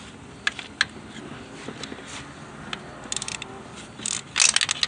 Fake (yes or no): no